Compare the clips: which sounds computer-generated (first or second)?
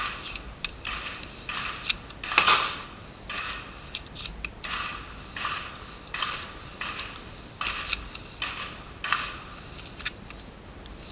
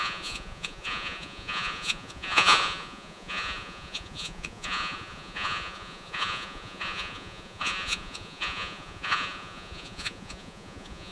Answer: second